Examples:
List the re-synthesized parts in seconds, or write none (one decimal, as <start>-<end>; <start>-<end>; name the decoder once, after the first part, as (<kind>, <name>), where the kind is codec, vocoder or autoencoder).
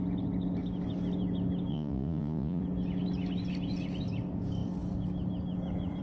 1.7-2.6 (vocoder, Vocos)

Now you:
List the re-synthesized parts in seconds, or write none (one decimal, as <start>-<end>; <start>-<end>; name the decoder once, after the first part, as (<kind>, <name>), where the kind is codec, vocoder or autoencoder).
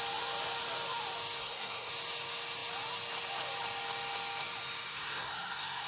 1.4-1.9 (codec, SNAC); 4.9-5.9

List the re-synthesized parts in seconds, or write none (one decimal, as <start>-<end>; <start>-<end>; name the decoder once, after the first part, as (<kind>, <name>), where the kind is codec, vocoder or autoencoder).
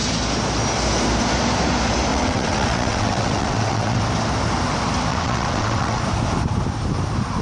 2.1-4.0 (vocoder, WaveNeXt); 5.1-6.0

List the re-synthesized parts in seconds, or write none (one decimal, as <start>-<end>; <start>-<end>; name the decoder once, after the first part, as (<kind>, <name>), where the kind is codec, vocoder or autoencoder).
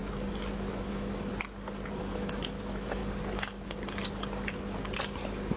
0.7-1.3 (autoencoder, DAC-VAE); 2.0-3.0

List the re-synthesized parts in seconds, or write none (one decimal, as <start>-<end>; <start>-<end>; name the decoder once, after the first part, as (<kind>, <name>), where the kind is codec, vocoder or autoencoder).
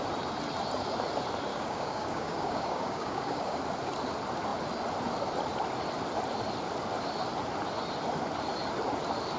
1.5-3.6 (codec, DAC)